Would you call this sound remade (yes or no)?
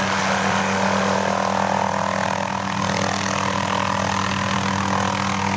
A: no